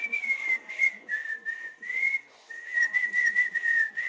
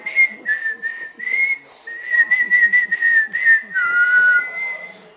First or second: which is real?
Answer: second